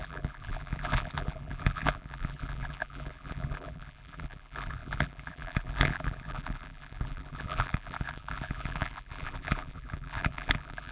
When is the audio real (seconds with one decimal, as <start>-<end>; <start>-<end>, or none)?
none

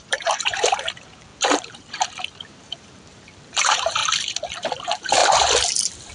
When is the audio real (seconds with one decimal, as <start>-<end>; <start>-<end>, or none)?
4.0-4.8; 5.2-6.1